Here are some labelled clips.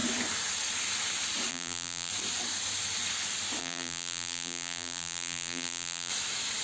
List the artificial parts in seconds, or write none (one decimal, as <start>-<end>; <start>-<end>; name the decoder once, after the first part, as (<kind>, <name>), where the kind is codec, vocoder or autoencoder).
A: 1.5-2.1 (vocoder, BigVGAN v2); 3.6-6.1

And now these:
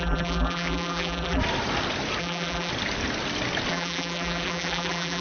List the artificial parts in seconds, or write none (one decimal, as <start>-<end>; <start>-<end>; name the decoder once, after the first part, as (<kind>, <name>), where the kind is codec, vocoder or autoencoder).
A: 0.0-1.4 (vocoder, BigVGAN v2); 2.2-2.7; 3.7-5.2

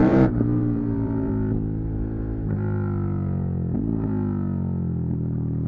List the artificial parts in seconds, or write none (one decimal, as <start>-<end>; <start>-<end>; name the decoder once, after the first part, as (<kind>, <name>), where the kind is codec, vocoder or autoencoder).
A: 0.0-1.3 (vocoder, BigVGAN v2)

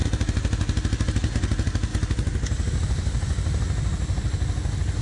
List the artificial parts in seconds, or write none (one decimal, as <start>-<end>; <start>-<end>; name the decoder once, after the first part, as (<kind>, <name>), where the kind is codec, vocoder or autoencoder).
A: none